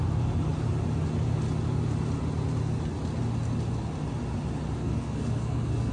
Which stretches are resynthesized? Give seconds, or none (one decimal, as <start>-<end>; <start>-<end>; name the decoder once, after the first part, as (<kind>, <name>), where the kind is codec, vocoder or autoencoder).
4.8-5.9 (codec, SNAC)